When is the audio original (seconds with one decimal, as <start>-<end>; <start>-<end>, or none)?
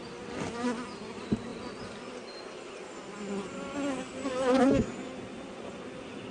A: 0.0-6.3